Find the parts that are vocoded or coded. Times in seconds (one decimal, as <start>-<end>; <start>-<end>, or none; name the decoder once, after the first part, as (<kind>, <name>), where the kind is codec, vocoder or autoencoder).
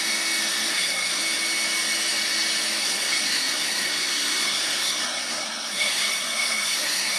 0.7-1.2 (codec, SNAC); 2.8-7.2